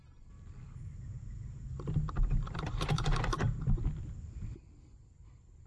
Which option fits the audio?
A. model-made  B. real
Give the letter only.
A